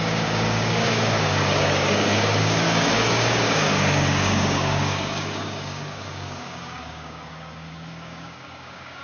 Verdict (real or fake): fake